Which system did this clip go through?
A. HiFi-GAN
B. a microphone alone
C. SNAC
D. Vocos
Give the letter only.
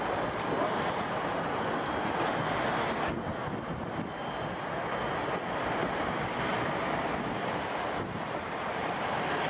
B